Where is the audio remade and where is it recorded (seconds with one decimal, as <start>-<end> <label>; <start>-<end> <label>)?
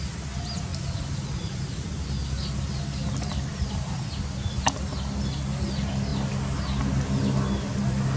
0.0-8.2 recorded